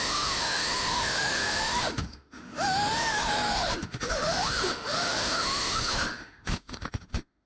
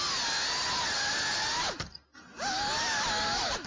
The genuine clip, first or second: second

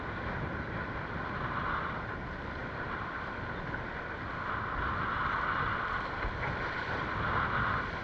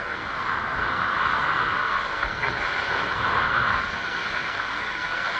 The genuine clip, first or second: first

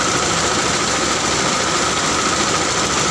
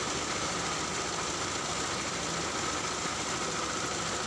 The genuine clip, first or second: second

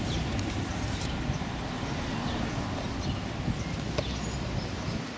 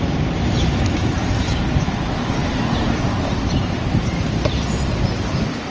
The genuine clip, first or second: first